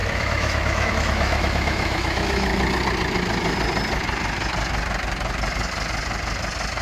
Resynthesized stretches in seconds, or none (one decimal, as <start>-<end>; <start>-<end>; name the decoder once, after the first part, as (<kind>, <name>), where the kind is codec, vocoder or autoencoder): 0.0-2.5 (autoencoder, DAC-VAE)